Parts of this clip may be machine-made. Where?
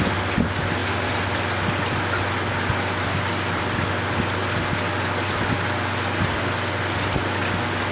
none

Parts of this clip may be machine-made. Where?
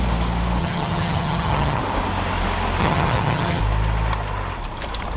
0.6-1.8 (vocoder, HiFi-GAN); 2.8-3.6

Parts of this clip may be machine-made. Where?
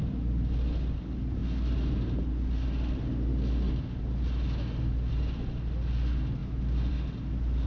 none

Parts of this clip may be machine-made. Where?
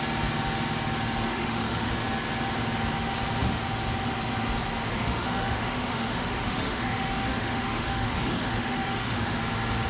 1.3-1.9 (autoencoder, DAC-VAE); 4.9-9.4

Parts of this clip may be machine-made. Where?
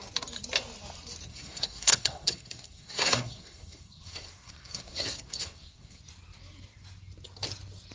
1.3-6.0 (codec, SNAC)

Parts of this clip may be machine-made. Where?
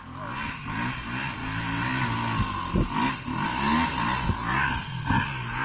none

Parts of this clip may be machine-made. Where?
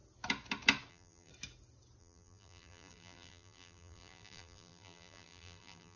0.9-1.3 (vocoder, BigVGAN v2); 2.0-6.0